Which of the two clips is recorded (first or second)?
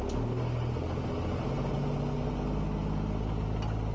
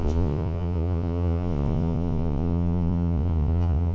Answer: first